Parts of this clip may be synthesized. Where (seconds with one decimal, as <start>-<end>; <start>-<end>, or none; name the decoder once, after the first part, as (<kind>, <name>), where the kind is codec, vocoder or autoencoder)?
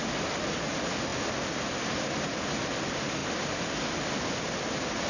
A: none